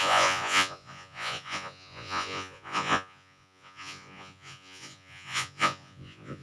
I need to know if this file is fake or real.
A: fake